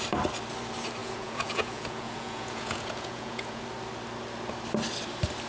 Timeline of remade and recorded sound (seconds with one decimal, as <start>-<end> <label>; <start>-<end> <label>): 0.0-1.0 recorded; 1.0-3.6 remade; 3.6-5.5 recorded